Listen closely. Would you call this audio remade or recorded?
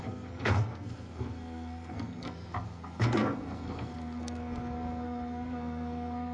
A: remade